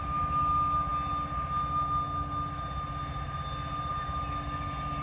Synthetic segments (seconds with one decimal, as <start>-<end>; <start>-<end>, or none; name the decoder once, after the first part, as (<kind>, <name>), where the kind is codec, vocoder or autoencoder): none